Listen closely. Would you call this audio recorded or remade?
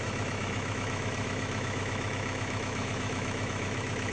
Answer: remade